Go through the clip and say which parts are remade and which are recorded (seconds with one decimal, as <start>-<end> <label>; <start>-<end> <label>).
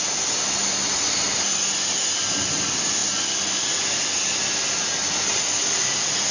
0.0-6.3 recorded